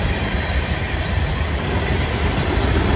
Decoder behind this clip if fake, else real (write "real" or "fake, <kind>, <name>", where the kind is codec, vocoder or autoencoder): fake, vocoder, BigVGAN v2